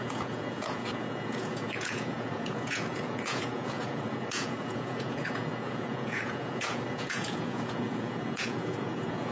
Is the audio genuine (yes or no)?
no